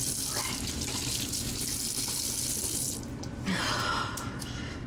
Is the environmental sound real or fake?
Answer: fake